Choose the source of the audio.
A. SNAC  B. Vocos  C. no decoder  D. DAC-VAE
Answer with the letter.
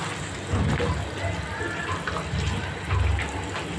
C